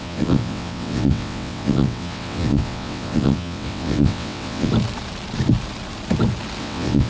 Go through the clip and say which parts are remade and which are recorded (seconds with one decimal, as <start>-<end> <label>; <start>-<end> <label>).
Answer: 0.0-4.7 remade; 4.7-6.6 recorded; 6.6-7.1 remade